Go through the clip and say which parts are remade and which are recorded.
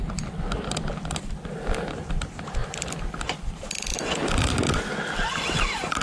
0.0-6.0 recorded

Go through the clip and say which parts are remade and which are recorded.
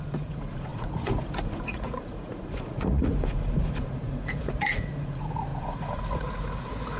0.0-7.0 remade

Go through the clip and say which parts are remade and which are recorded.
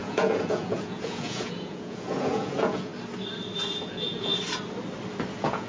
0.0-2.9 remade; 2.9-3.8 recorded; 3.8-4.3 remade; 4.3-5.3 recorded; 5.3-5.7 remade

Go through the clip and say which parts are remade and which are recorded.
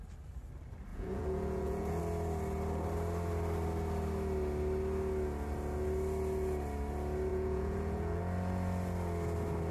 0.0-0.9 recorded; 0.9-2.0 remade; 2.0-7.3 recorded; 7.3-8.2 remade; 8.2-9.7 recorded